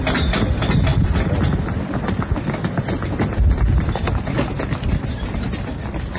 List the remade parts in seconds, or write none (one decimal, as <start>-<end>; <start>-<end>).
none